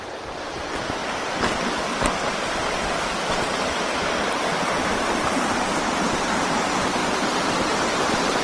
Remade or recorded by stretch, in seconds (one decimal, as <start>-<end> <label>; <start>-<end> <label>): 0.0-1.0 remade; 1.0-2.3 recorded; 2.3-7.0 remade; 7.0-7.5 recorded; 7.5-8.4 remade